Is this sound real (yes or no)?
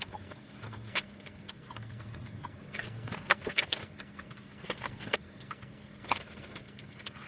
no